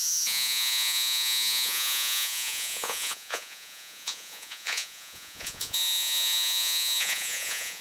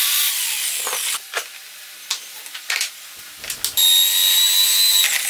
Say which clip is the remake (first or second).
first